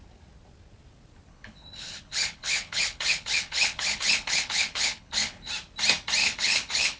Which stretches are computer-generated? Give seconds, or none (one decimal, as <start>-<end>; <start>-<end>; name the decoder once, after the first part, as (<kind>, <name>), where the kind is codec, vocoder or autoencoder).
1.3-5.5 (codec, HILCodec); 6.2-7.0